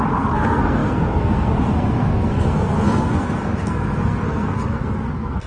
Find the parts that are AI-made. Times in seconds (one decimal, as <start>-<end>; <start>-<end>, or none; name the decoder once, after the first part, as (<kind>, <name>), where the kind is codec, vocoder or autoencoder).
0.0-5.5 (codec, SNAC)